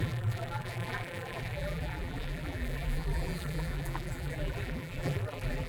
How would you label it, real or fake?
fake